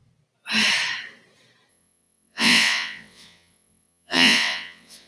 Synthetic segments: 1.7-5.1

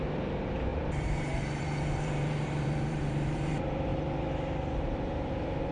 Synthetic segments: 0.0-5.7

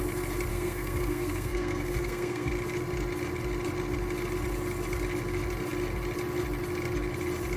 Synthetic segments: 0.5-2.5

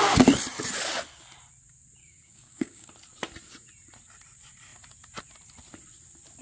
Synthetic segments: 2.0-2.9

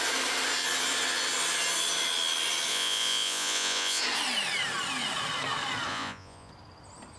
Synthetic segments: 2.7-4.0; 5.9-6.5